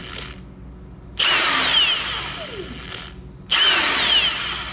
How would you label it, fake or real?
real